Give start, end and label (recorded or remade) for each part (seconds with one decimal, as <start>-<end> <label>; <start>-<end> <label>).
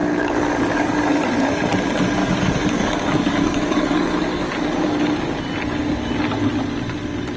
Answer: 0.0-1.2 remade; 1.2-2.2 recorded; 2.2-5.4 remade; 5.4-7.4 recorded